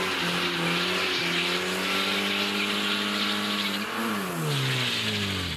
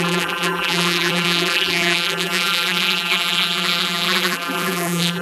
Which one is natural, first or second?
first